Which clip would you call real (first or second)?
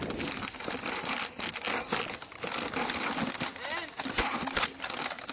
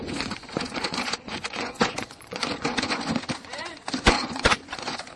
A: first